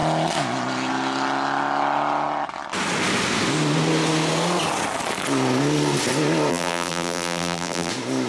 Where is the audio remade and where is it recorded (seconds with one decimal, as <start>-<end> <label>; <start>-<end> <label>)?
0.0-6.5 recorded; 6.5-7.9 remade; 7.9-8.3 recorded